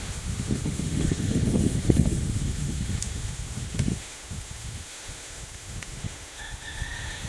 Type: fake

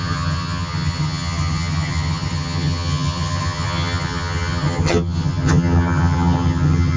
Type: fake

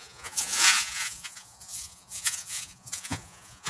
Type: fake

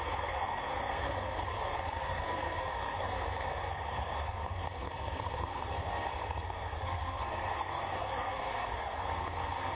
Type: fake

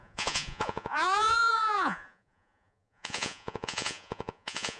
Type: fake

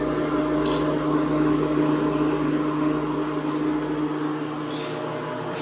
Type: real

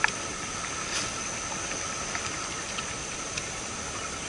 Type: real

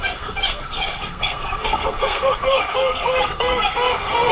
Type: fake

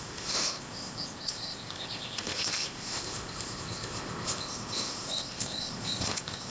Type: fake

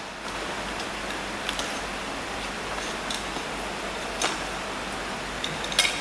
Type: real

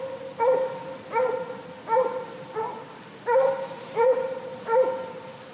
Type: real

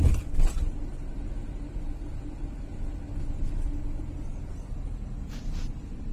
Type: real